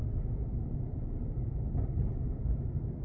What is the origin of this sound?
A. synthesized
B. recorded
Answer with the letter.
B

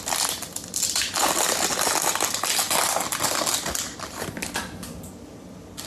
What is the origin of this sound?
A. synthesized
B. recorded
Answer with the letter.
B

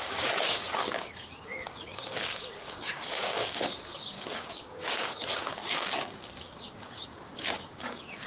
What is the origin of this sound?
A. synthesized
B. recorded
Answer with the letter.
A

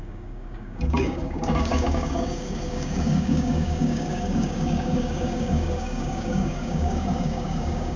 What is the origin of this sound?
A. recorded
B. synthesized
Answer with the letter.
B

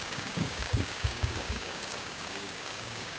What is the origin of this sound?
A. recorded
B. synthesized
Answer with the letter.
B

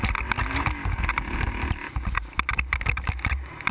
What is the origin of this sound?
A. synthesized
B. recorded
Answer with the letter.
B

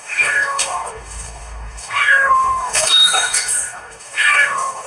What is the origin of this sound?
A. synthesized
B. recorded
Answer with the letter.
A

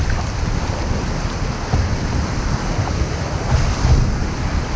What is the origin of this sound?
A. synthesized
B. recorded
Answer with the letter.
B